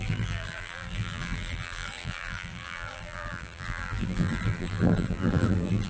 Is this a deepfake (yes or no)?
yes